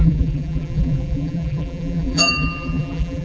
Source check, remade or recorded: remade